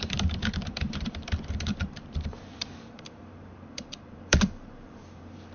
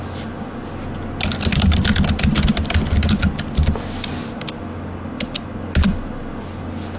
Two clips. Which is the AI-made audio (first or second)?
first